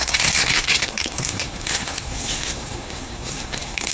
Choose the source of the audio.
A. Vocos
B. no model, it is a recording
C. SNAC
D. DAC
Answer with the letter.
C